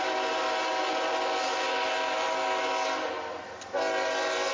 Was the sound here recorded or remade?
recorded